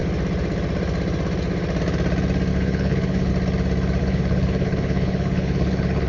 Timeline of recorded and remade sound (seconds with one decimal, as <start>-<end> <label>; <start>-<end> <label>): 0.0-2.5 recorded; 2.5-3.3 remade; 3.3-4.0 recorded; 4.0-6.1 remade